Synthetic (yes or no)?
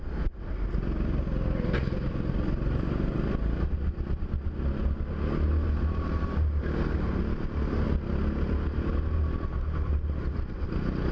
no